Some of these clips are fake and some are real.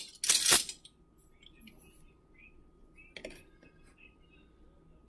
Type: real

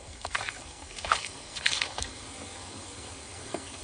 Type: fake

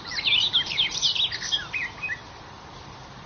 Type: real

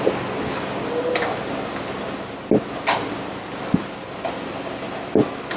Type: real